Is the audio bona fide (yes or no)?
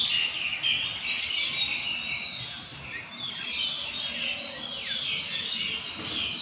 yes